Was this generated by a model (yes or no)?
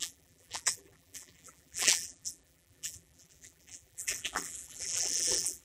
yes